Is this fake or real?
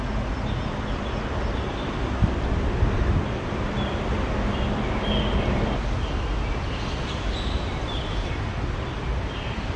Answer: real